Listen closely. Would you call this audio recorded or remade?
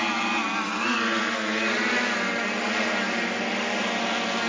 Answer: recorded